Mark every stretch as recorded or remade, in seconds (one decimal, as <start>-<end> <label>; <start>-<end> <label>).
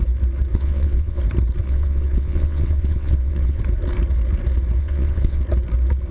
0.0-0.5 recorded; 0.5-1.2 remade; 1.2-1.6 recorded; 1.6-3.6 remade; 3.6-4.8 recorded; 4.8-5.4 remade; 5.4-6.1 recorded